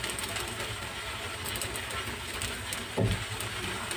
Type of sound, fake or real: real